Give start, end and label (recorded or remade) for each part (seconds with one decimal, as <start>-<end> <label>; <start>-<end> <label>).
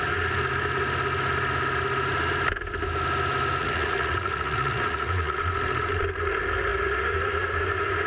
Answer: 0.0-3.6 recorded; 3.6-5.4 remade; 5.4-8.1 recorded